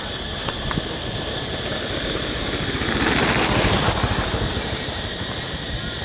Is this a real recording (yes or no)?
yes